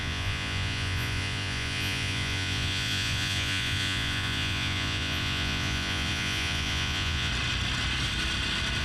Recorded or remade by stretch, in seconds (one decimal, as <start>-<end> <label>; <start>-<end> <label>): 0.0-7.3 remade; 7.3-8.8 recorded